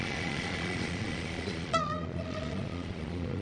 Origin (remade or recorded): remade